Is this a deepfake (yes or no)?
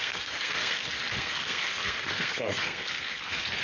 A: yes